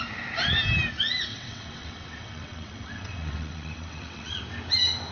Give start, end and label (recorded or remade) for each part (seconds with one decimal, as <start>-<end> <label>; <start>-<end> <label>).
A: 0.0-1.3 recorded; 1.3-4.4 remade; 4.4-5.1 recorded